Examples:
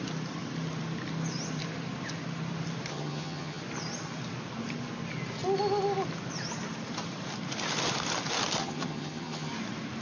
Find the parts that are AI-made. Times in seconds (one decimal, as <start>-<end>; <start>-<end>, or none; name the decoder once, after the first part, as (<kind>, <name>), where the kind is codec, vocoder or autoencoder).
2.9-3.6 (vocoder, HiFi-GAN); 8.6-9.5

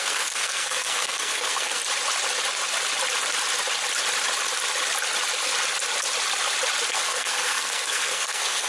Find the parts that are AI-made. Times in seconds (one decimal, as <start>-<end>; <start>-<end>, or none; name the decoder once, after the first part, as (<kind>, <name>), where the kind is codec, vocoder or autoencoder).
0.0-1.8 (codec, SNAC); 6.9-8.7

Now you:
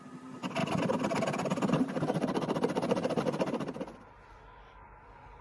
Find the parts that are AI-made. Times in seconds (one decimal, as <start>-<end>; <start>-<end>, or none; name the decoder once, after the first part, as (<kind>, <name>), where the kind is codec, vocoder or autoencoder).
none

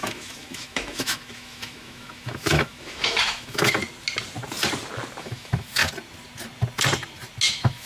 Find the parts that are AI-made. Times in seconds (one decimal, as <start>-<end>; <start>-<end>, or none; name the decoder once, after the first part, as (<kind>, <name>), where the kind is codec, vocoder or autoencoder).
0.0-3.8 (autoencoder, DAC-VAE); 5.2-5.8; 7.5-7.9

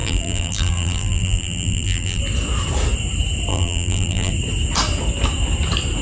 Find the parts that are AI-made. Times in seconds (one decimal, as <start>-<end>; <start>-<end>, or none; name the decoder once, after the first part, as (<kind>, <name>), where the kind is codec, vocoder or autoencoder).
0.0-2.2 (vocoder, BigVGAN v2); 3.5-4.3